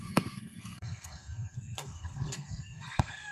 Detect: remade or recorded remade